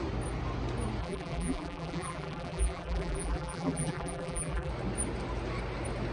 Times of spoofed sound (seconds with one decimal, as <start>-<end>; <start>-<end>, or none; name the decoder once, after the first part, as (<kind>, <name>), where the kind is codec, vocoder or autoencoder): 1.0-4.7 (vocoder, BigVGAN v2)